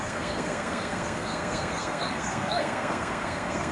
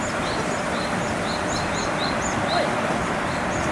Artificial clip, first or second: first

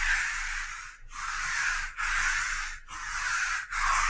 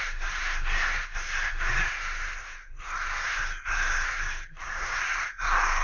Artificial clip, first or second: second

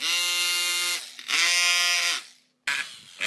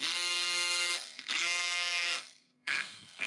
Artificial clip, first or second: second